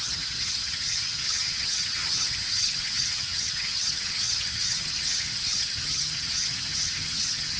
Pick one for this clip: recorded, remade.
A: remade